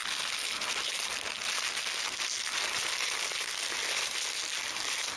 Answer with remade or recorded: recorded